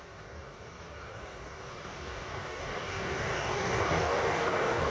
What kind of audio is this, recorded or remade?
remade